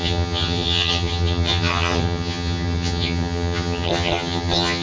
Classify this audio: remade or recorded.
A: remade